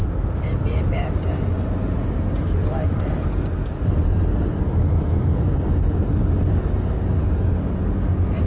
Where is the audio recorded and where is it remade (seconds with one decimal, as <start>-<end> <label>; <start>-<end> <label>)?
0.0-8.5 recorded